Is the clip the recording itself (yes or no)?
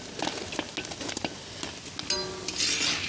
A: yes